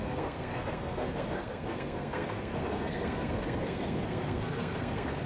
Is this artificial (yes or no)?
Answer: yes